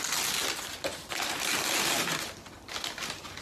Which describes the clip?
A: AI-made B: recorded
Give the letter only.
B